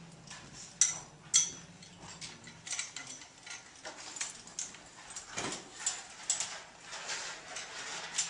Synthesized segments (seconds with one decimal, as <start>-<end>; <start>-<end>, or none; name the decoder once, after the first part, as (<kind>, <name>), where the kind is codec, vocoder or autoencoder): none